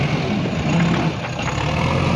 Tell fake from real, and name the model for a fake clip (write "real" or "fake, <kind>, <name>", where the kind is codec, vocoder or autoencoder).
real